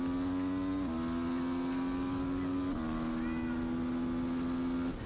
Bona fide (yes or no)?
yes